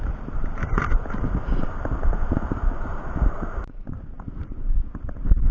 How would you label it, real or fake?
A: fake